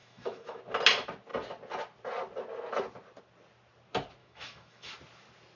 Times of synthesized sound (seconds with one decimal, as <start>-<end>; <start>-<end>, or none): 0.0-0.6; 4.2-4.9